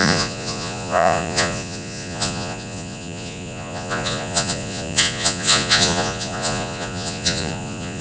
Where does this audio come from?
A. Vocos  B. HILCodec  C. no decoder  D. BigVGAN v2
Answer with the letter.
A